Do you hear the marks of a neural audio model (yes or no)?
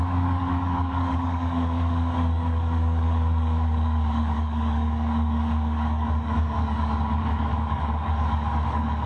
yes